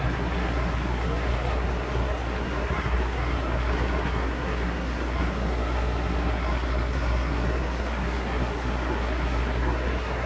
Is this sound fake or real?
fake